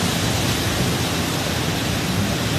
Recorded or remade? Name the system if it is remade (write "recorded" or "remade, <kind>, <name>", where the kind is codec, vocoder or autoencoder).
recorded